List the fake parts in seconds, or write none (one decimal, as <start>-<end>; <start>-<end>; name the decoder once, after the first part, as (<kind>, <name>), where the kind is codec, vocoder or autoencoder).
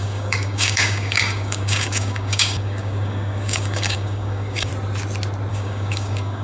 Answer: 0.0-4.7 (codec, DAC); 5.5-6.4